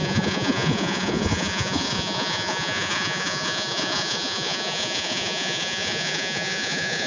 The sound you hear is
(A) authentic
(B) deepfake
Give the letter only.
B